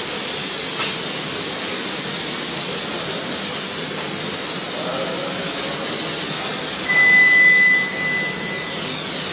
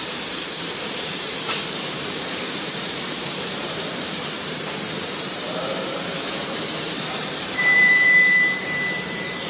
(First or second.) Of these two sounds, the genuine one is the first